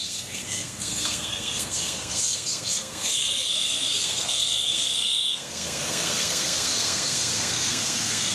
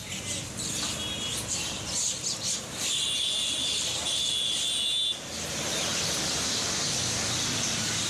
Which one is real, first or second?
second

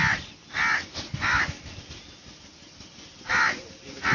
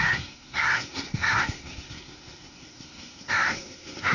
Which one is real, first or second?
first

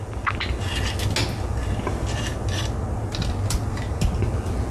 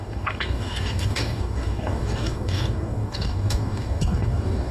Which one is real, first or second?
first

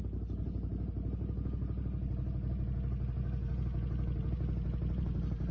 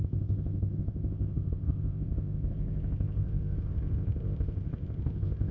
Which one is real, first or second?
first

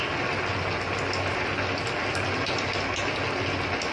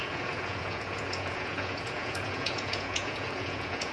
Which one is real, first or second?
first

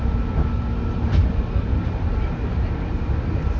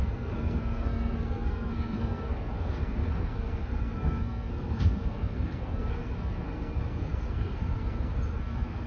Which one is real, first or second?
first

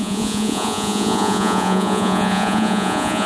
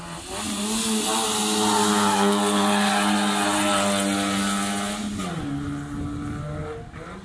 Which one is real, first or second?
second